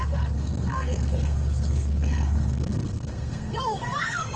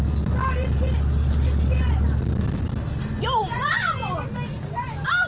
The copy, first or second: first